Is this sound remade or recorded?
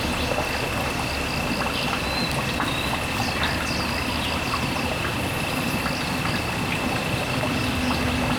recorded